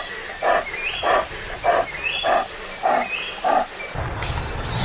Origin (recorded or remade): recorded